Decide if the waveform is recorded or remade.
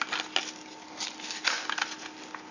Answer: recorded